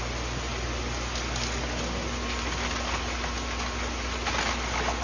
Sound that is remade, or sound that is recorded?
recorded